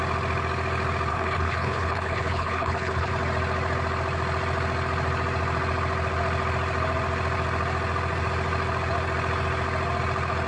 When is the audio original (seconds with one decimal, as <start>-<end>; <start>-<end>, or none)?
0.0-1.1; 3.1-10.5